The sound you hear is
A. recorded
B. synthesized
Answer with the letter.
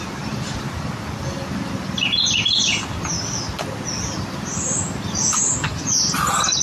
A